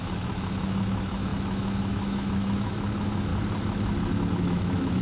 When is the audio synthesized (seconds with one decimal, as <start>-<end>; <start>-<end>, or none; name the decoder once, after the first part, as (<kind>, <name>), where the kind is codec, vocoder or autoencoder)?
0.0-3.3 (autoencoder, DAC-VAE); 4.3-5.0